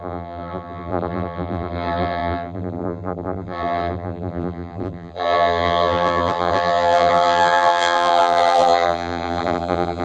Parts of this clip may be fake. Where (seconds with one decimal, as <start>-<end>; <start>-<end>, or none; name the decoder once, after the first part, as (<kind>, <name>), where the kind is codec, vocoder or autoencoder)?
0.0-10.0 (vocoder, BigVGAN v2)